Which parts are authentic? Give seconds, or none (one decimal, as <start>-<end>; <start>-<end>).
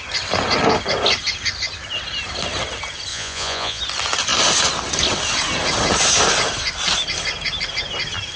0.0-3.1; 3.8-8.4